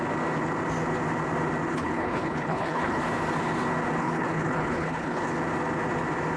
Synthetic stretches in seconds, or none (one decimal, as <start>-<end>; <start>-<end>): 1.7-3.0; 4.0-5.3